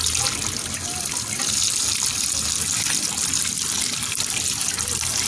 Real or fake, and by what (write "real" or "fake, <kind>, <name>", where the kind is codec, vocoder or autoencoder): real